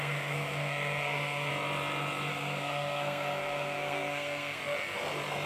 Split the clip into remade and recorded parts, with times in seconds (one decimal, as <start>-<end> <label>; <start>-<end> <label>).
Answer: 0.0-1.5 remade; 1.5-2.3 recorded; 2.3-4.6 remade; 4.6-5.5 recorded